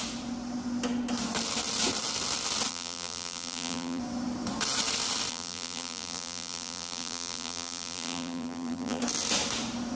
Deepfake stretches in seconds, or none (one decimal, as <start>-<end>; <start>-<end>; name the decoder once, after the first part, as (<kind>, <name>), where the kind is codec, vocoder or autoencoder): 2.7-4.0 (vocoder, BigVGAN v2); 5.3-9.0